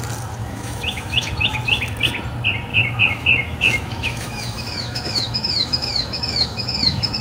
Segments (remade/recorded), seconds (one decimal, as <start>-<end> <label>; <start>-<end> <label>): 0.0-0.4 recorded; 0.4-1.6 remade; 1.6-2.7 recorded; 2.7-7.2 remade